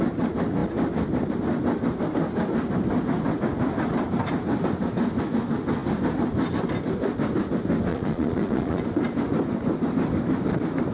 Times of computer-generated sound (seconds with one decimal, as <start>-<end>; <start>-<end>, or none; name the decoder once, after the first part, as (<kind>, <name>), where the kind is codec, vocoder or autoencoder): 7.9-8.8 (vocoder, Vocos)